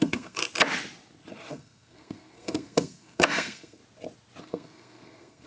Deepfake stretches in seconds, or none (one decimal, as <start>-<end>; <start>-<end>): 0.0-0.4; 1.5-3.8; 4.4-5.5